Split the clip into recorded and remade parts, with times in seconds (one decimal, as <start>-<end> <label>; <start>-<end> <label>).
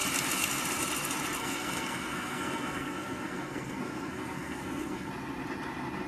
0.0-1.4 recorded; 1.4-5.1 remade; 5.1-6.1 recorded